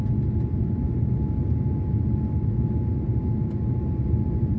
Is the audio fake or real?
real